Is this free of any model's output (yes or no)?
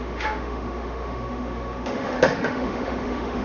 no